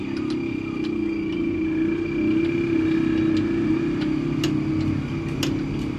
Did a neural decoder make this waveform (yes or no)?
no